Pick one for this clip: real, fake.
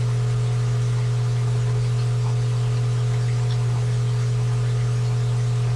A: real